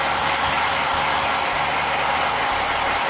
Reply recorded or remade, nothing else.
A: recorded